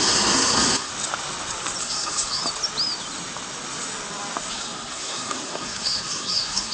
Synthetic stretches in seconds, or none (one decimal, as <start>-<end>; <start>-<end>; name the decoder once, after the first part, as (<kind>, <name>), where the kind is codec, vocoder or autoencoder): 0.0-0.9 (codec, SNAC); 1.8-2.4; 4.5-6.7